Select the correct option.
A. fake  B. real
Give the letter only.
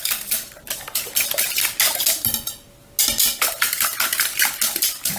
B